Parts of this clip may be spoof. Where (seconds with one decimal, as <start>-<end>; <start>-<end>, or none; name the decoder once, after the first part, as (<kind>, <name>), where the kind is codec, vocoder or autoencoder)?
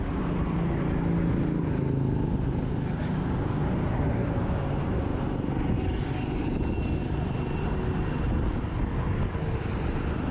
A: none